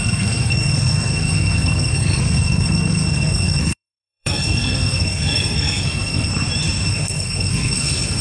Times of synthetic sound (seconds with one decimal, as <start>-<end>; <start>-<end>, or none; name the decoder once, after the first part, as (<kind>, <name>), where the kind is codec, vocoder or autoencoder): 0.0-6.3 (codec, SNAC); 6.9-8.2